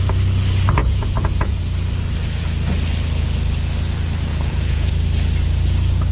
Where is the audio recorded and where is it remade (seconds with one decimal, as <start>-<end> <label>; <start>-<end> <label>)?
0.0-0.8 recorded; 0.8-1.6 remade; 1.6-4.3 recorded; 4.3-4.9 remade; 4.9-6.1 recorded